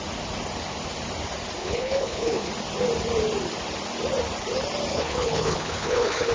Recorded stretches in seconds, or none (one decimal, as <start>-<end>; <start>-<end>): 0.0-1.6; 2.5-4.9